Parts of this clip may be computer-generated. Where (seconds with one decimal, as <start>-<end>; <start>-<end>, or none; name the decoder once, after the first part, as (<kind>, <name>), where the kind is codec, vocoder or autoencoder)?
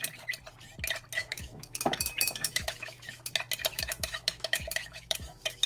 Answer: 1.2-3.3 (autoencoder, DAC-VAE); 3.7-5.7